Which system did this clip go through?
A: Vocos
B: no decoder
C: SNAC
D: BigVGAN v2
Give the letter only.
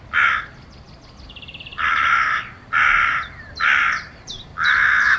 D